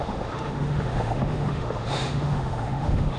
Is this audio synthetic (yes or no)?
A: yes